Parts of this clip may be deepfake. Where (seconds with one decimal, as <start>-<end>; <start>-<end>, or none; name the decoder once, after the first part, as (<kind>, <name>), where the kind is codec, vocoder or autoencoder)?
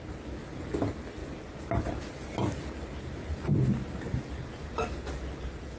none